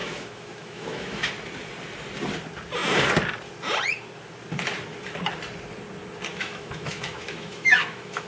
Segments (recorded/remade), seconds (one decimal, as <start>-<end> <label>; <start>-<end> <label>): 0.0-1.3 remade; 1.3-6.3 recorded; 6.3-8.3 remade